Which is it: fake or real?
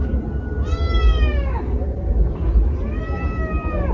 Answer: real